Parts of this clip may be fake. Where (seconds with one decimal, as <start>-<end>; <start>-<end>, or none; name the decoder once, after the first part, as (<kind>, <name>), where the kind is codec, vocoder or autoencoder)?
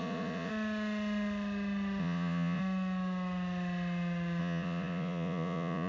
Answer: 0.0-0.5 (vocoder, Vocos); 2.0-2.6; 4.4-5.9